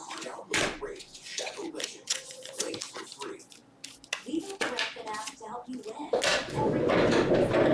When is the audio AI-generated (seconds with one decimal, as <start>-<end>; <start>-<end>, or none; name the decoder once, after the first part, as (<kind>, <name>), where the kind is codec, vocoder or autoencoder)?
0.0-2.7 (vocoder, Vocos); 6.3-6.9